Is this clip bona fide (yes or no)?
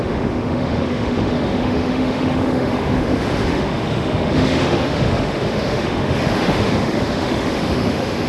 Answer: no